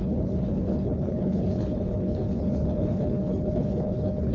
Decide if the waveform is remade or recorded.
remade